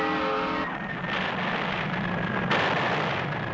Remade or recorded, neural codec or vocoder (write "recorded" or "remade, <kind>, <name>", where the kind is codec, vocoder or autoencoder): recorded